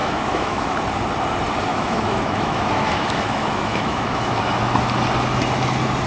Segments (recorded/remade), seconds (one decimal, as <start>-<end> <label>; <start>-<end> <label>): 0.0-0.8 remade; 0.8-1.7 recorded; 1.7-4.4 remade; 4.4-6.1 recorded

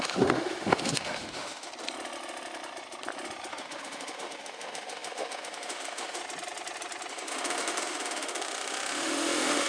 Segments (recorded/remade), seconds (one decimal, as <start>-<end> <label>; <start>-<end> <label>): 0.0-1.7 remade; 1.7-3.5 recorded; 3.5-6.2 remade; 6.2-7.1 recorded; 7.1-9.7 remade